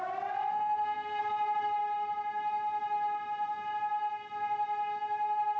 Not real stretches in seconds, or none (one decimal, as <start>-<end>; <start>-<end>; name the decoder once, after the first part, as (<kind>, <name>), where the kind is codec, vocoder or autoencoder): 0.5-1.2 (codec, SNAC)